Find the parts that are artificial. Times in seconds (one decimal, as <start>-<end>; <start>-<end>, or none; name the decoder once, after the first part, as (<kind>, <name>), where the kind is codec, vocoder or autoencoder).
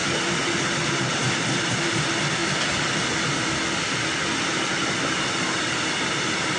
1.1-2.4 (vocoder, BigVGAN v2); 4.4-6.6